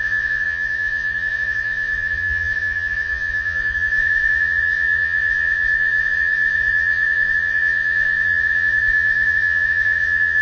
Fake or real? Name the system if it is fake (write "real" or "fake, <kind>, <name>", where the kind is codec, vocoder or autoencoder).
fake, vocoder, Vocos